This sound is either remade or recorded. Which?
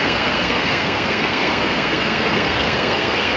remade